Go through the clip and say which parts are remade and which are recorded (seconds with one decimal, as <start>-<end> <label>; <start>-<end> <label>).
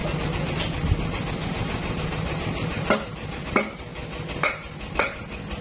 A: 0.0-5.6 recorded